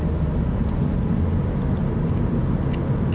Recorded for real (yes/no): yes